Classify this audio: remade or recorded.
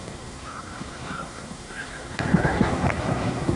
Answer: remade